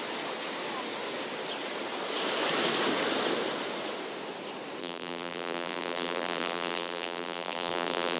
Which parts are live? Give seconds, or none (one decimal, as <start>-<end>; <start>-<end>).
0.0-4.8